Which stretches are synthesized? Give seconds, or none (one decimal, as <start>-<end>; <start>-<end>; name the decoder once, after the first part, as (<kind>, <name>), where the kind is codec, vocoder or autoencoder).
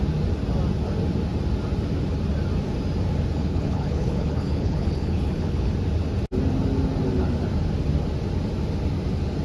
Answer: 3.4-5.7 (codec, HILCodec)